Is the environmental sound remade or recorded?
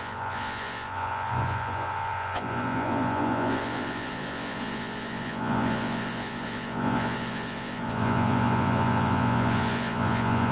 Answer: remade